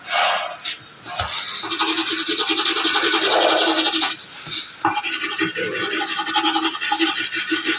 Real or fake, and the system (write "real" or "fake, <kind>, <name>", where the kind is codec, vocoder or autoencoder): real